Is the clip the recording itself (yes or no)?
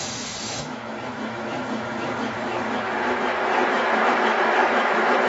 no